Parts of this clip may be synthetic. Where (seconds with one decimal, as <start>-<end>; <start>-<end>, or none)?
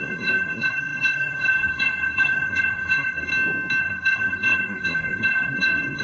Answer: 0.0-3.3; 3.8-6.0